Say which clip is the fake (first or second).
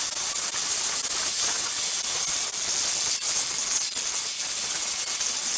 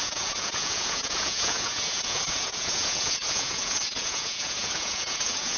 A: second